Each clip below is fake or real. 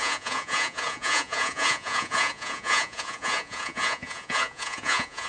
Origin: fake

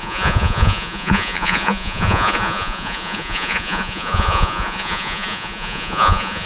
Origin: fake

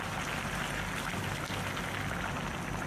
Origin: real